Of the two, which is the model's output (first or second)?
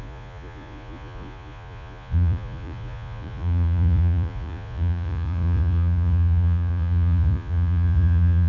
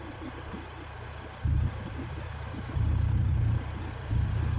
first